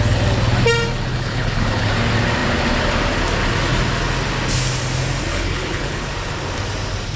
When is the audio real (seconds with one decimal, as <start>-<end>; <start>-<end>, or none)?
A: 0.0-1.1; 1.9-5.3; 6.1-7.2